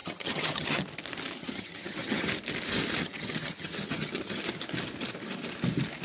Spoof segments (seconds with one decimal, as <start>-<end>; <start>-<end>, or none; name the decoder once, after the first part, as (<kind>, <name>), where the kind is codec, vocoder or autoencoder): 0.0-0.8 (vocoder, HiFi-GAN); 1.4-2.3; 3.0-4.4